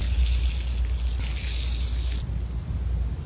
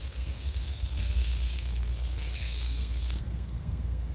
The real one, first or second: first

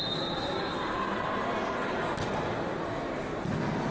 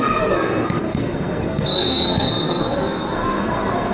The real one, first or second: first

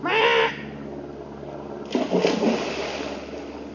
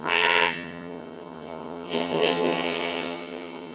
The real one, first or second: first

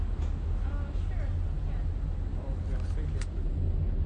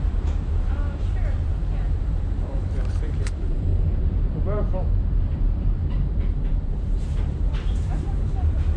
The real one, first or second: first